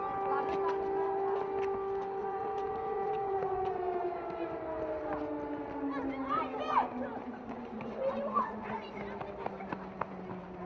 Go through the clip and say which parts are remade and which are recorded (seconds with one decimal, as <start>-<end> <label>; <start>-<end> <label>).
0.0-2.2 recorded; 2.2-3.7 remade; 3.7-7.1 recorded; 7.1-9.0 remade; 9.0-10.7 recorded

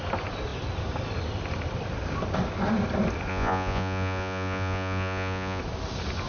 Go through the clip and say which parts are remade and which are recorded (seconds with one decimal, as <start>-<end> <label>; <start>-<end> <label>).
0.0-3.3 recorded; 3.3-5.6 remade; 5.6-6.3 recorded

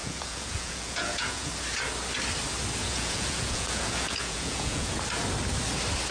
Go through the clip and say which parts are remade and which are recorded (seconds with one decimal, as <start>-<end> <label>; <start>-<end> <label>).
0.0-1.5 remade; 1.5-2.8 recorded; 2.8-5.0 remade; 5.0-6.1 recorded

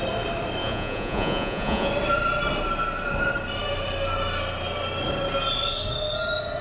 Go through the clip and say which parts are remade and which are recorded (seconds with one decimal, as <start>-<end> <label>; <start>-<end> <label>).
0.0-0.6 recorded; 0.6-1.9 remade; 1.9-6.6 recorded

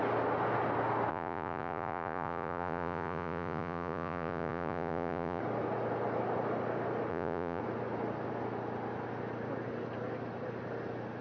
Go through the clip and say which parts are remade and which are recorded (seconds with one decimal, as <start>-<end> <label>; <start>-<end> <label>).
0.0-1.1 recorded; 1.1-5.4 remade; 5.4-7.1 recorded; 7.1-7.6 remade; 7.6-11.2 recorded